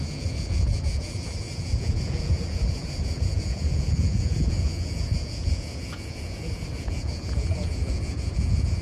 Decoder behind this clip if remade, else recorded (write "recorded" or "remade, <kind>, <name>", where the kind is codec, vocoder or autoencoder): remade, vocoder, Vocos